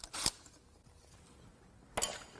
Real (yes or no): yes